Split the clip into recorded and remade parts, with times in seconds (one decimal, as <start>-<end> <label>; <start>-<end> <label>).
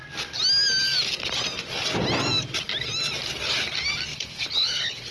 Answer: 0.0-4.1 recorded; 4.1-5.1 remade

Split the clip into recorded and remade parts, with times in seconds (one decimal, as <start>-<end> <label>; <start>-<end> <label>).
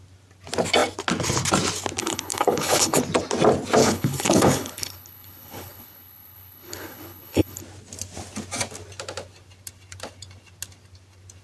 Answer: 0.0-2.0 recorded; 2.0-3.0 remade; 3.0-3.8 recorded; 3.8-7.6 remade; 7.6-11.4 recorded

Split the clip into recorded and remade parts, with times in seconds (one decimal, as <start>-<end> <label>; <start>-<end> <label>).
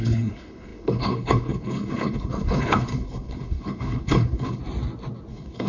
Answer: 0.0-4.6 remade; 4.6-5.3 recorded; 5.3-5.7 remade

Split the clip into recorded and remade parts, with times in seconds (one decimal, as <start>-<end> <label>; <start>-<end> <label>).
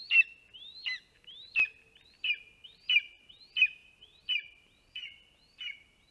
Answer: 0.0-6.1 recorded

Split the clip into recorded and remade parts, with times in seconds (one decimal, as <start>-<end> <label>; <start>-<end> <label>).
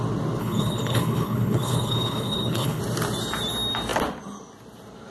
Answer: 0.0-0.4 recorded; 0.4-2.8 remade; 2.8-5.1 recorded